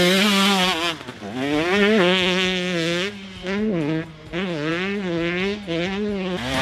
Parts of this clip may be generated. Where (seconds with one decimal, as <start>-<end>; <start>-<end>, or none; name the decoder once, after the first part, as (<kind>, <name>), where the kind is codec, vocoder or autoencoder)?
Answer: none